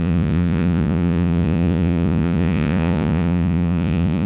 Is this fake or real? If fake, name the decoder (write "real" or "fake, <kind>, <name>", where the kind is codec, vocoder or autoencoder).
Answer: fake, vocoder, Vocos